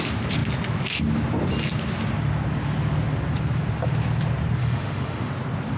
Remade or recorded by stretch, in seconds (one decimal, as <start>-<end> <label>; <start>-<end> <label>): 0.0-4.6 recorded; 4.6-5.3 remade; 5.3-5.8 recorded